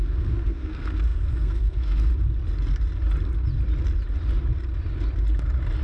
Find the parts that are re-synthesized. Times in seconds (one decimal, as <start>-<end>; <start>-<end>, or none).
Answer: 0.0-2.1